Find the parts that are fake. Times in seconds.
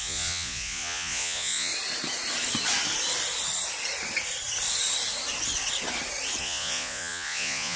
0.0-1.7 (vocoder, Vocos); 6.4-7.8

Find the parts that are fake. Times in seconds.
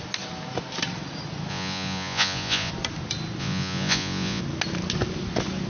1.5-2.7 (vocoder, Vocos); 3.4-4.4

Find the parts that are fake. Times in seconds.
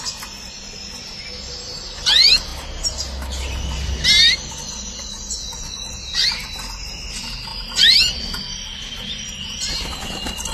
none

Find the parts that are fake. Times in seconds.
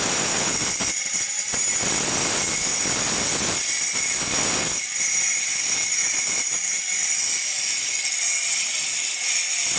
none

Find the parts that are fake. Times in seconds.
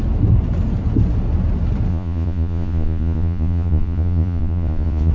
1.9-5.1 (vocoder, Vocos)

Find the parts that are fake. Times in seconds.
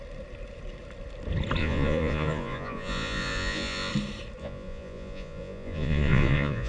1.6-3.9 (vocoder, Vocos); 4.4-6.7